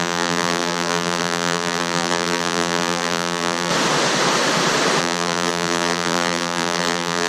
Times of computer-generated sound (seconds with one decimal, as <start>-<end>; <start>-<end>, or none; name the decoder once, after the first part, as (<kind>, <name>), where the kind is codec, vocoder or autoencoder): 0.0-3.7 (vocoder, BigVGAN v2); 5.0-7.3